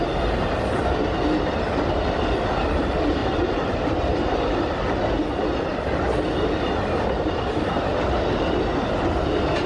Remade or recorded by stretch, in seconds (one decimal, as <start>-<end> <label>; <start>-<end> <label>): 0.0-9.7 recorded